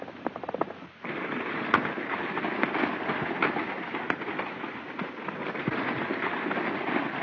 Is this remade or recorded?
recorded